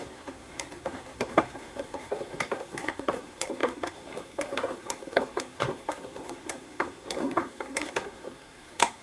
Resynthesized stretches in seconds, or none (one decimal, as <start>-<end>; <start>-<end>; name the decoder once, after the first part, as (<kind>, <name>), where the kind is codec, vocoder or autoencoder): 0.0-9.0 (codec, SNAC)

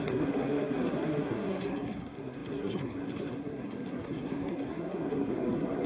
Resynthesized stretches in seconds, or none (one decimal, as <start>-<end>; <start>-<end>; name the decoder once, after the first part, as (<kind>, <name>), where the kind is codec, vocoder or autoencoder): 0.0-5.9 (codec, SNAC)

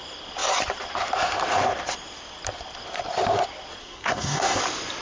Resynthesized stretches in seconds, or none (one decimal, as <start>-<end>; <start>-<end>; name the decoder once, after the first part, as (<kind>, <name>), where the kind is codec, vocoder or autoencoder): 3.8-4.6 (codec, SNAC)

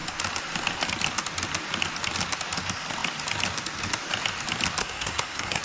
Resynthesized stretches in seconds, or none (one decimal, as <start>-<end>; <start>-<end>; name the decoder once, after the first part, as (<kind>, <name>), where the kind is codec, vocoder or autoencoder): 4.8-5.6 (codec, SNAC)

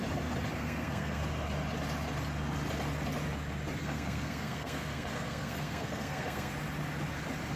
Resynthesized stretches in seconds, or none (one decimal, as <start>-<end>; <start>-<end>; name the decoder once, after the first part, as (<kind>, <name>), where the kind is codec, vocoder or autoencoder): 0.6-1.2 (codec, SNAC); 3.8-6.5

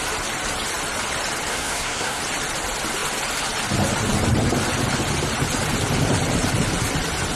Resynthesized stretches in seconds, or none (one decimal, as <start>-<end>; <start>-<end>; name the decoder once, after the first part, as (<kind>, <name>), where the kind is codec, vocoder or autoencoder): 1.5-2.2 (codec, SNAC)